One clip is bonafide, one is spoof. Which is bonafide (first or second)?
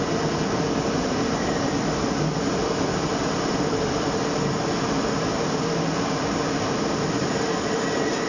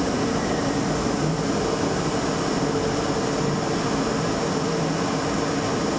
second